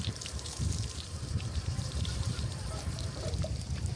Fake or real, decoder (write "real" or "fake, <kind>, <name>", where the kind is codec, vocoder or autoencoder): fake, vocoder, BigVGAN v2